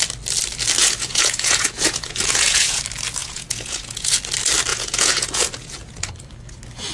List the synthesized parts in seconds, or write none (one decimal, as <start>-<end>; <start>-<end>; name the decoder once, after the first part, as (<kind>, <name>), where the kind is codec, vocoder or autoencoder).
0.8-2.8 (vocoder, Vocos); 3.2-4.2; 4.7-6.1